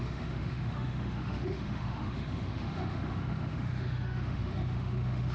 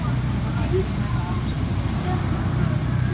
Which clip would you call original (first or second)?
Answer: second